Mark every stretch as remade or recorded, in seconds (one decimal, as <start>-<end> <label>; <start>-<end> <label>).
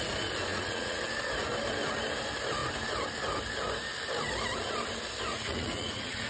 0.0-0.5 recorded; 0.5-1.0 remade; 1.0-5.3 recorded; 5.3-6.3 remade